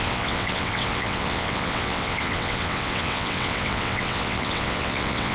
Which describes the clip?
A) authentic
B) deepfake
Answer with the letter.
B